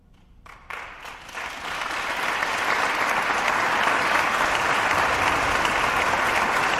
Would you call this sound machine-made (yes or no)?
no